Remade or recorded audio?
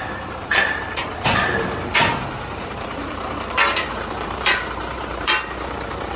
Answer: remade